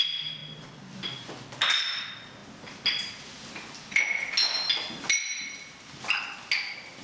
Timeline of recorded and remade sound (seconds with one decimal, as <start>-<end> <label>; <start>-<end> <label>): 0.0-7.0 recorded